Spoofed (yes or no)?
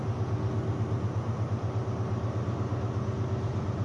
no